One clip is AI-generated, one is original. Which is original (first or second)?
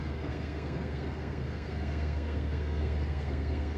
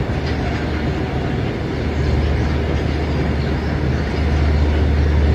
second